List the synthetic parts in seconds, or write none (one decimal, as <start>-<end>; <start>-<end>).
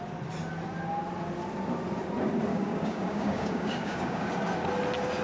2.5-4.3